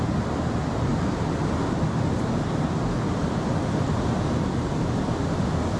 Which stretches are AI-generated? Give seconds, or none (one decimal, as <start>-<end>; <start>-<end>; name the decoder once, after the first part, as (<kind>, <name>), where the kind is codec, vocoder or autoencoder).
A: none